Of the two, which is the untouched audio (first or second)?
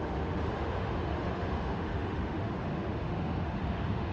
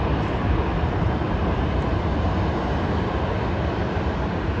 second